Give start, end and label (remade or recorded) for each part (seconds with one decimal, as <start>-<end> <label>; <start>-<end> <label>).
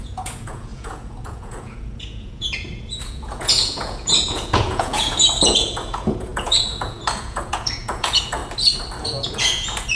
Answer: 0.0-8.4 remade; 8.4-9.0 recorded; 9.0-9.9 remade